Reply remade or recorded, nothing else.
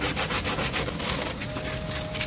recorded